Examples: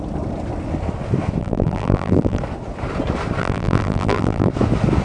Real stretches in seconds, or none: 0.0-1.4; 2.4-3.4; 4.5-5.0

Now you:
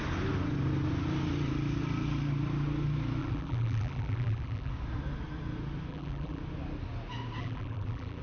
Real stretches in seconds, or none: 0.0-3.2; 4.7-5.9; 6.4-7.4

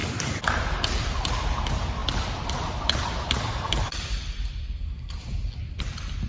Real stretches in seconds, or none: 0.0-6.3

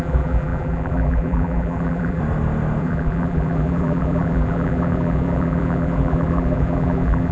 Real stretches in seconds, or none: 2.2-2.8

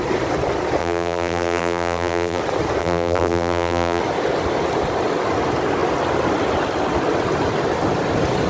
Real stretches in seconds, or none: 0.0-0.8; 2.4-2.8; 4.0-8.5

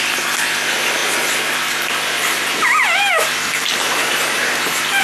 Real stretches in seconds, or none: 0.0-5.0

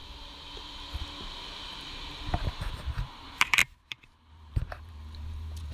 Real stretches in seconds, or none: 0.0-2.2

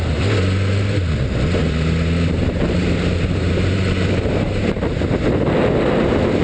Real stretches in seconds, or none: 0.0-1.6; 5.4-6.4